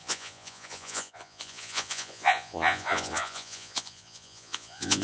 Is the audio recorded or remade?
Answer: remade